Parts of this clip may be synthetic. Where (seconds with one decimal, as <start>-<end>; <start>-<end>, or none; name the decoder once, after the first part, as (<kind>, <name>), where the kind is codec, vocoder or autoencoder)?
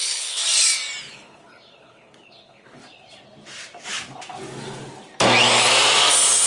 0.0-0.4 (codec, HILCodec); 1.0-2.8